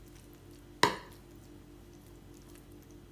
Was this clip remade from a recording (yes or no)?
no